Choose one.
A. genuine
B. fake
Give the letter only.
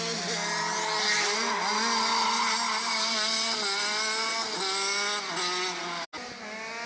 A